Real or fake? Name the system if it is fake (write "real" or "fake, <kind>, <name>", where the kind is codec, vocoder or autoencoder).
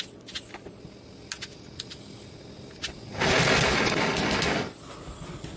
real